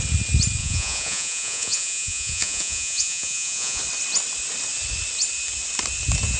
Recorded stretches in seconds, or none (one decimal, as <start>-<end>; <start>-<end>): 0.0-0.6; 3.8-6.4